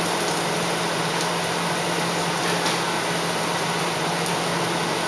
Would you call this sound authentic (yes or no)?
yes